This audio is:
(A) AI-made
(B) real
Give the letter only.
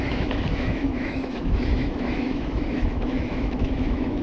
A